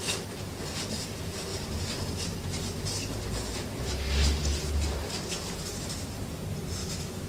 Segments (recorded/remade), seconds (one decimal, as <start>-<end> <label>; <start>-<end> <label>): 0.0-6.8 recorded; 6.8-7.3 remade